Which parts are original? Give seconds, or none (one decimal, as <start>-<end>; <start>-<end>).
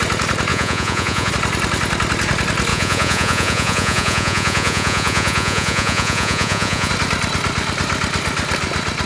0.0-0.5; 1.3-2.7; 6.9-9.1